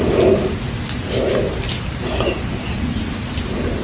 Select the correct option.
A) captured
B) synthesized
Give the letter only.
A